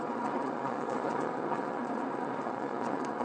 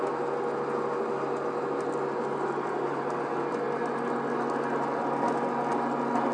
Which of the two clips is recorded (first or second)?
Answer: second